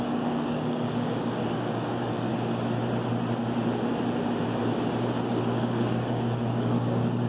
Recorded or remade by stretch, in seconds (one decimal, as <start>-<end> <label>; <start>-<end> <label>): 0.0-2.3 remade; 2.3-5.4 recorded; 5.4-7.3 remade